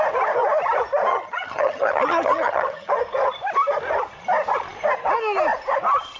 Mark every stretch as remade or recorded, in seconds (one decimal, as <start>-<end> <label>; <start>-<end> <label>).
0.0-1.1 recorded; 1.1-2.9 remade; 2.9-6.2 recorded